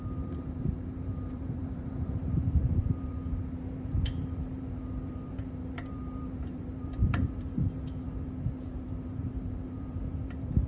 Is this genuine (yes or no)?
no